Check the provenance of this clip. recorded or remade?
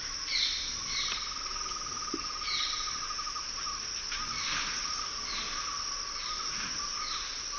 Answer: recorded